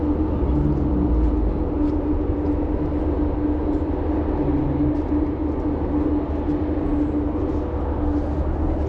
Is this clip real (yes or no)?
yes